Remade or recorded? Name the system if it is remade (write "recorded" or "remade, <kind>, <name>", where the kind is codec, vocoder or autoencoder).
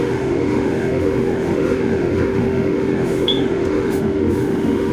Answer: remade, autoencoder, DAC-VAE